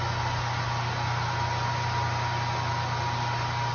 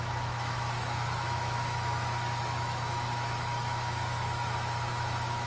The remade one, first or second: second